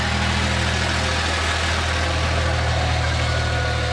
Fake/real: real